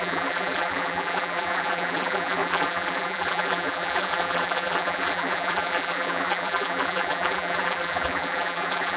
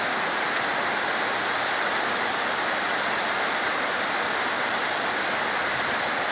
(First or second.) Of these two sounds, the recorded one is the second